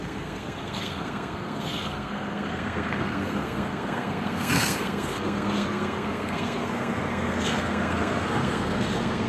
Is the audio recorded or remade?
remade